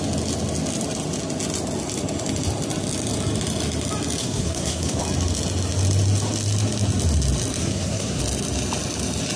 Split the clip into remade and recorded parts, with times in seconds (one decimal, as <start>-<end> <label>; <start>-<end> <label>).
0.0-4.2 recorded; 4.2-5.0 remade; 5.0-7.6 recorded; 7.6-8.2 remade; 8.2-9.4 recorded